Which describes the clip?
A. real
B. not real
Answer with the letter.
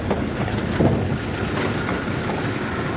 A